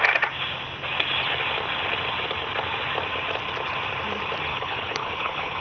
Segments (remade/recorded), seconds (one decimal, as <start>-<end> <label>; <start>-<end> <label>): 0.0-4.5 recorded; 4.5-5.6 remade